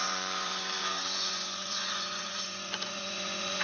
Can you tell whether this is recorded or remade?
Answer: remade